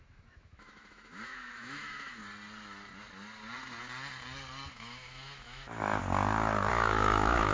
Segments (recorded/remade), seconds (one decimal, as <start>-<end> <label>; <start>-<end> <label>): 0.0-2.2 remade; 2.2-4.7 recorded; 4.7-6.0 remade; 6.0-6.7 recorded; 6.7-7.5 remade